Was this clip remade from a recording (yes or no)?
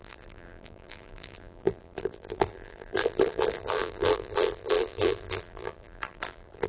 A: yes